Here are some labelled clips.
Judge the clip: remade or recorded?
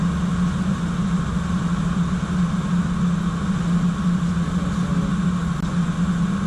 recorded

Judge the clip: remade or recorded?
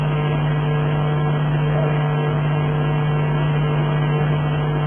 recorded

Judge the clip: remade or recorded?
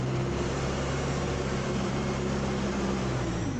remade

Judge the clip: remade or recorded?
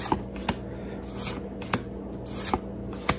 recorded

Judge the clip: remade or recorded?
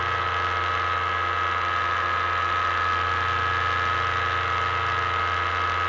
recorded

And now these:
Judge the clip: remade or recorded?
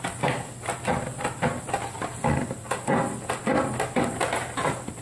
recorded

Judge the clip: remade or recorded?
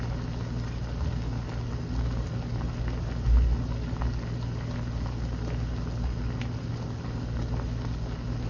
recorded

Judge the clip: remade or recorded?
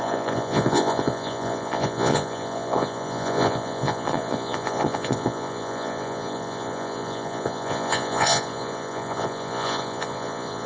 remade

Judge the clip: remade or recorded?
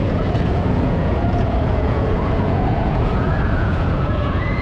remade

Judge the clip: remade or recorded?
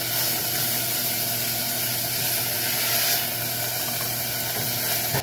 recorded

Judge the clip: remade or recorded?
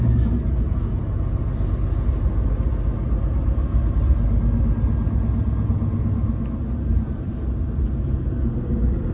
recorded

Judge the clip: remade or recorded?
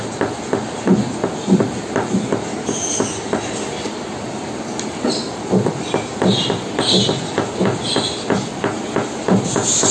recorded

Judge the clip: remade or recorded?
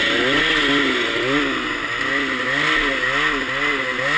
recorded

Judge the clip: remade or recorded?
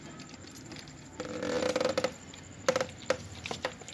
recorded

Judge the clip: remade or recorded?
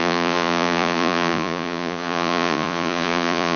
remade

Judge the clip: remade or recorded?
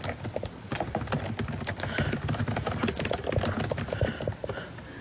recorded